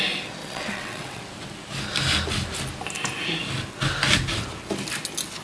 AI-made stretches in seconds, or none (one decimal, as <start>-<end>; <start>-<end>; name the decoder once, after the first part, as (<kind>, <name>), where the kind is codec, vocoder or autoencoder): 0.4-1.2 (vocoder, WaveNeXt)